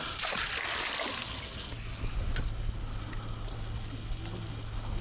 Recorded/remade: recorded